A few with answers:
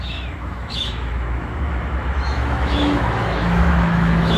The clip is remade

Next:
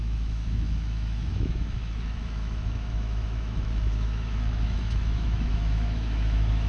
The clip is remade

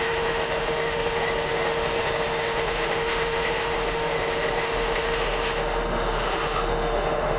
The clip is remade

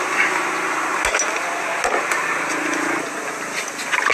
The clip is recorded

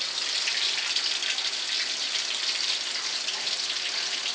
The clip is recorded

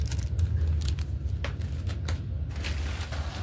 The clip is recorded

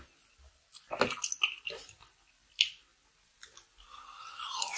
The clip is recorded